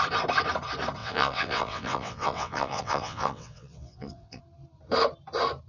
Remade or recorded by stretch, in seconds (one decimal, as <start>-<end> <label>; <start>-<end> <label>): 0.0-1.0 recorded; 1.0-4.4 remade; 4.4-5.7 recorded

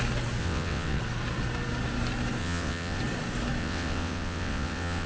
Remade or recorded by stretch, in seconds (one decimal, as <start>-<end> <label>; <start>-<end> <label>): 0.0-0.4 recorded; 0.4-1.0 remade; 1.0-2.4 recorded; 2.4-3.0 remade; 3.0-3.6 recorded; 3.6-5.1 remade

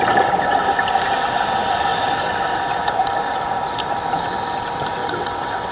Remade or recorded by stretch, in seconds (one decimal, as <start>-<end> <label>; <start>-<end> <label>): 0.0-5.0 recorded; 5.0-5.7 remade

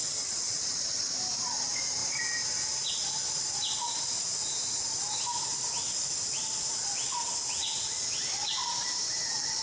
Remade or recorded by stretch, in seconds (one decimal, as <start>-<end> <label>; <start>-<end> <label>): 0.0-1.1 remade; 1.1-9.6 recorded

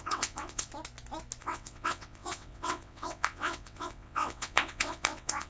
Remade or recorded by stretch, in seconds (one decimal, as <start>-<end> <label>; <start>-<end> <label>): 0.0-0.7 remade; 0.7-1.4 recorded; 1.4-5.5 remade

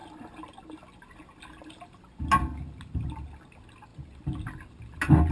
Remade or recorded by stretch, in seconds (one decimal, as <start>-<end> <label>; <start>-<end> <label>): 0.0-5.3 recorded